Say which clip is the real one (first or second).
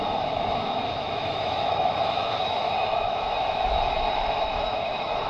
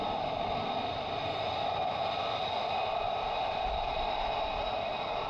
second